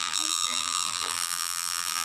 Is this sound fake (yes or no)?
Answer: yes